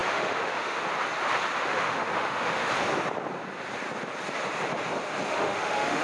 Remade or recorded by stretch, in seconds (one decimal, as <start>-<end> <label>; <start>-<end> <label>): 0.0-0.8 remade; 0.8-1.7 recorded; 1.7-2.7 remade; 2.7-5.3 recorded; 5.3-6.0 remade